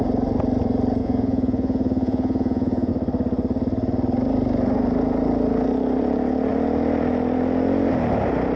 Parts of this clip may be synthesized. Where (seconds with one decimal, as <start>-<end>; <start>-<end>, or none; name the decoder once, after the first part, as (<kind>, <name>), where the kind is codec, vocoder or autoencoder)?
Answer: 1.0-2.9 (vocoder, Vocos)